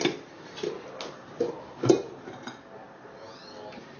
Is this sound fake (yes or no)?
no